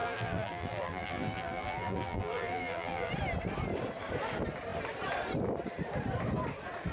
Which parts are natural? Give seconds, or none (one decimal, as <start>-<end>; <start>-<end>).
3.1-6.9